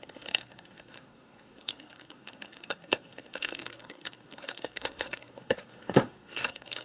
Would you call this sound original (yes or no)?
no